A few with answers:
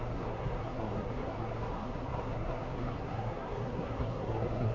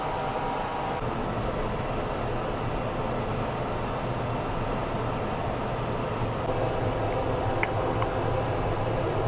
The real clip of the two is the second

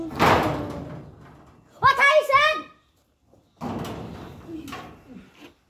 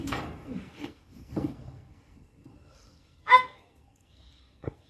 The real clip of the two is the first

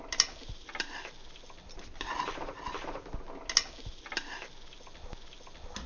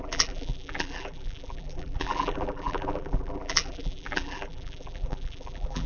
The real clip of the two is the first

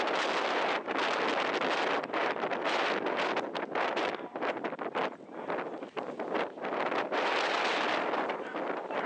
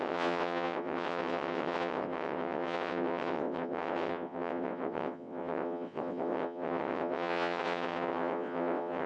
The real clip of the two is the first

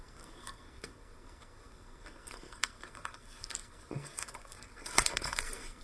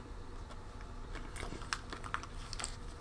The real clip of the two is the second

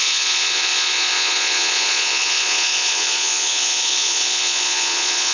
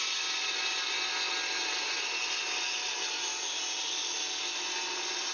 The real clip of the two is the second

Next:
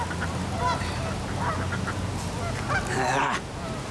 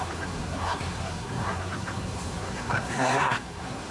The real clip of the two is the first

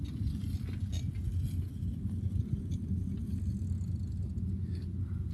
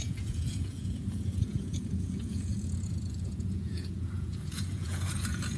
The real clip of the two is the first